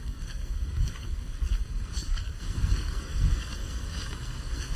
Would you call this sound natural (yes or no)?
no